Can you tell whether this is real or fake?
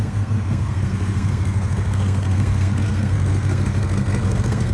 fake